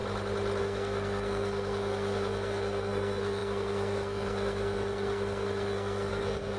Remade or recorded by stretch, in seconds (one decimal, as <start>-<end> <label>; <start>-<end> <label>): 0.0-0.6 recorded; 0.6-6.6 remade